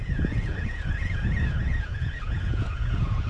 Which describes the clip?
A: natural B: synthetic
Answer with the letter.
B